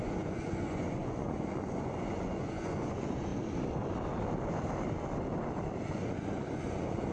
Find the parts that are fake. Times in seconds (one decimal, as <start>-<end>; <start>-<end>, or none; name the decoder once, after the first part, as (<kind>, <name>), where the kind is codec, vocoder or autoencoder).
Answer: 0.0-3.3 (vocoder, Vocos); 5.8-7.1